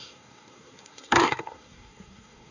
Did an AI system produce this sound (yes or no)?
yes